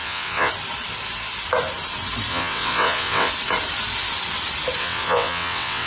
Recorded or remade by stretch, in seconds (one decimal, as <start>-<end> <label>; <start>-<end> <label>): 0.0-0.5 remade; 0.5-2.3 recorded; 2.3-3.3 remade; 3.3-4.8 recorded; 4.8-5.9 remade